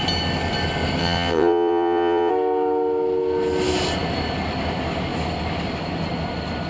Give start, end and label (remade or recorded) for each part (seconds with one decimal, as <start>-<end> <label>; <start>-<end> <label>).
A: 0.0-1.0 recorded; 1.0-2.3 remade; 2.3-6.7 recorded